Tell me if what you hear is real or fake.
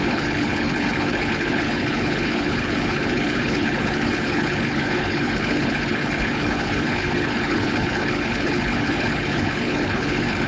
fake